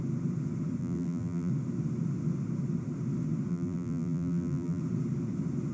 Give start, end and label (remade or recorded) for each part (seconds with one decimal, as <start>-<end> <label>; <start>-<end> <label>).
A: 0.0-0.8 recorded; 0.8-1.5 remade; 1.5-3.5 recorded; 3.5-4.8 remade; 4.8-5.7 recorded